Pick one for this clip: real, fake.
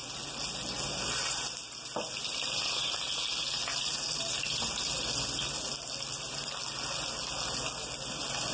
real